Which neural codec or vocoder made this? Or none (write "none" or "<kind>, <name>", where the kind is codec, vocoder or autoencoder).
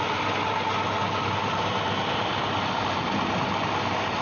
none